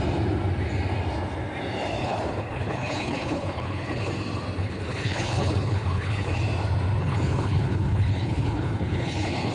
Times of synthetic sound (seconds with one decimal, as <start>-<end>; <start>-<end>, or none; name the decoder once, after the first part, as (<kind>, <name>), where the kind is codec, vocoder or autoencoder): 2.0-4.1 (codec, HILCodec); 4.6-6.4; 7.0-9.5